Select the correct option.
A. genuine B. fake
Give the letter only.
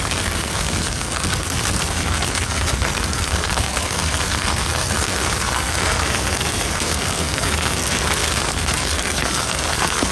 B